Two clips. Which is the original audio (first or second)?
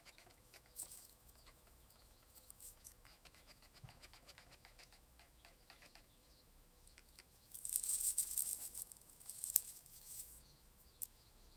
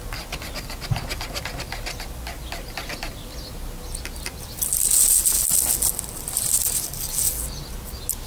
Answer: second